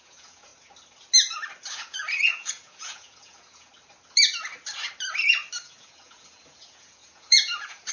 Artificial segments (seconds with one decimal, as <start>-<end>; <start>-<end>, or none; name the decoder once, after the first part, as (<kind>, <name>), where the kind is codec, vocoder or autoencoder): 0.0-0.5 (vocoder, Vocos); 1.7-3.7; 5.6-7.9